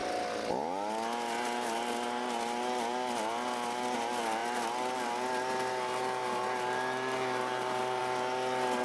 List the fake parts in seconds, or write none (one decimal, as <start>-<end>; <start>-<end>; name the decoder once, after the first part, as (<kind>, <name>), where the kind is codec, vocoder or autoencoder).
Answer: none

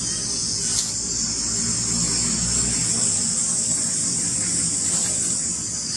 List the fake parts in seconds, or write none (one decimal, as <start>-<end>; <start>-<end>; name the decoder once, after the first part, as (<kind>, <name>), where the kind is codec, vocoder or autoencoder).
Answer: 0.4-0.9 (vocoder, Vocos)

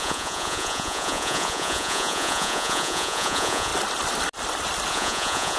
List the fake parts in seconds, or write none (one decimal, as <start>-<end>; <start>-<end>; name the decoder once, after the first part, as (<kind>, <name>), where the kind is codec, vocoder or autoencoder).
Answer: 0.0-3.7 (vocoder, Vocos); 4.9-5.6